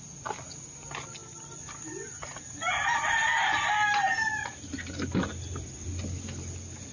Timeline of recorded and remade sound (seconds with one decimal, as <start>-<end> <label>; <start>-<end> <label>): 0.0-6.9 recorded